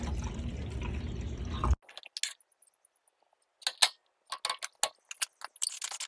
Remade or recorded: recorded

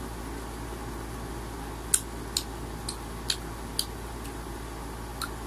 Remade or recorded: recorded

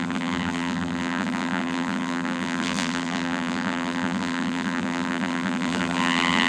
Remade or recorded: remade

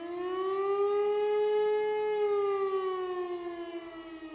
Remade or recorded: recorded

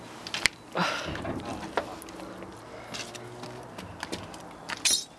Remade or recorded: recorded